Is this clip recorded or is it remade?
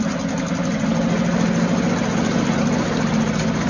recorded